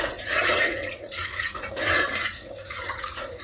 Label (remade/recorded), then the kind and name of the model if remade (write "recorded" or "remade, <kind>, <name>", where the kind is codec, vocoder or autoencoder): remade, vocoder, Vocos